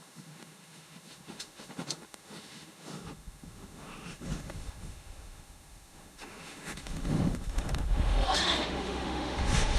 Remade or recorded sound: remade